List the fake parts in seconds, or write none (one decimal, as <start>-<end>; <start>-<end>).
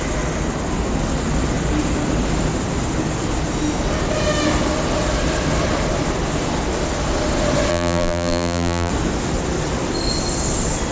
7.7-8.9